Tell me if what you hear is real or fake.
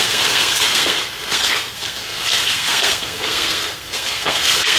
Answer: fake